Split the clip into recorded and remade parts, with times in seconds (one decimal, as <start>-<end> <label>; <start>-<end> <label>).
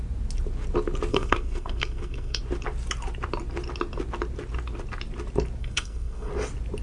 0.0-1.1 recorded; 1.1-2.4 remade; 2.4-5.6 recorded; 5.6-6.3 remade; 6.3-6.8 recorded